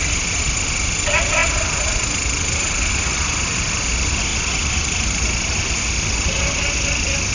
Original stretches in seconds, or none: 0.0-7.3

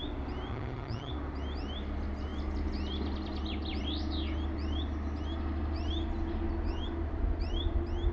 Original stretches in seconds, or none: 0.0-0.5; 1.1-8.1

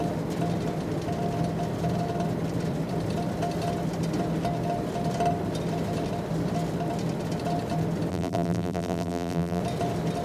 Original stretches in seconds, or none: 0.0-8.1; 9.6-10.2

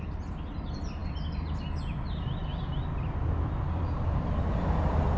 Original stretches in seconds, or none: 0.0-5.2

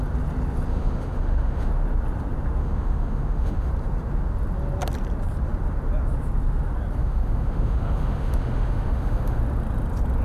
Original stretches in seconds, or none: 0.0-0.7; 1.7-2.6; 3.7-7.0; 9.4-10.2